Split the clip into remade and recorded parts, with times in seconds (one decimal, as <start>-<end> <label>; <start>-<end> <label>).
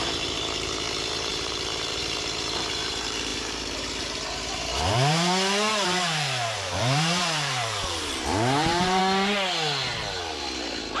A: 0.0-9.0 remade; 9.0-11.0 recorded